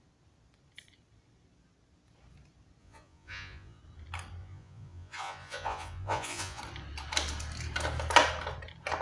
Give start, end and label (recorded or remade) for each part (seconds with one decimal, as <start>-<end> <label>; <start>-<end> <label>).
0.0-2.8 recorded; 2.8-3.8 remade; 3.8-4.4 recorded; 4.4-6.6 remade; 6.6-9.0 recorded